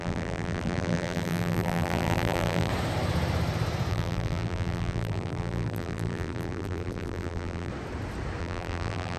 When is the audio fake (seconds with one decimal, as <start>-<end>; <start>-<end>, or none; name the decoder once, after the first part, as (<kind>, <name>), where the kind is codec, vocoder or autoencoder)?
0.0-2.7 (vocoder, BigVGAN v2); 3.9-7.7; 8.4-9.2